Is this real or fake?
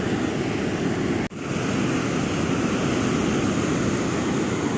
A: real